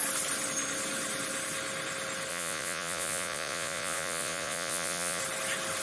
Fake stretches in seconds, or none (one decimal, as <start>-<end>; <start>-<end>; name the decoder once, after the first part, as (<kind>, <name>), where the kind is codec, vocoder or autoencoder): 2.3-5.2 (vocoder, Vocos)